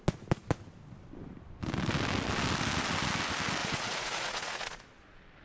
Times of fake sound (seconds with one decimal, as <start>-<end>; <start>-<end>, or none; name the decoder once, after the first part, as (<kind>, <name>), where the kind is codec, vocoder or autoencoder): 3.6-4.8 (vocoder, Vocos)